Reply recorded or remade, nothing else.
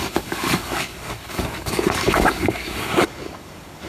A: remade